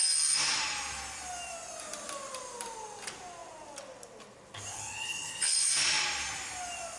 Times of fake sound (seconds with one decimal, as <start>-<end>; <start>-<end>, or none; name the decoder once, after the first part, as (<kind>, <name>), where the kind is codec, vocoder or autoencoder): 4.7-5.7 (codec, HILCodec)